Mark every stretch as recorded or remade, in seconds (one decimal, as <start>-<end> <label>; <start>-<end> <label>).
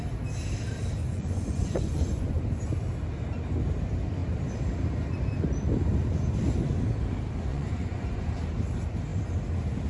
0.0-1.0 recorded; 1.0-2.4 remade; 2.4-7.5 recorded; 7.5-8.3 remade; 8.3-9.9 recorded